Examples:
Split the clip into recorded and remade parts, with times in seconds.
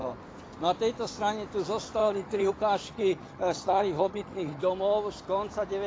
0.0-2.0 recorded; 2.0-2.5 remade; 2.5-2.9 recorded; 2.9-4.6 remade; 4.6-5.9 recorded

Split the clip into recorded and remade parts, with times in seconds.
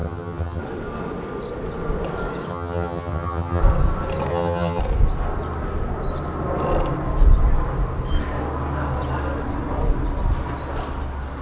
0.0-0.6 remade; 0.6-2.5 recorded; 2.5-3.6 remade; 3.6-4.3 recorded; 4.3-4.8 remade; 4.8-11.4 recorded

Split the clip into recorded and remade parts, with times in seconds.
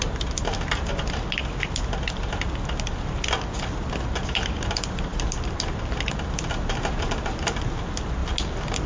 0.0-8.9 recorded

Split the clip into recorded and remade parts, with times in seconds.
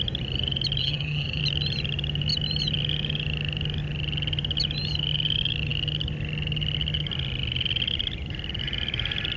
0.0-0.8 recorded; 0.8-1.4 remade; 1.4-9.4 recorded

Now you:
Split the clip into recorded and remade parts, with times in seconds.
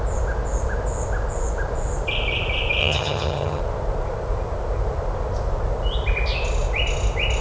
0.0-2.8 recorded; 2.8-3.6 remade; 3.6-7.4 recorded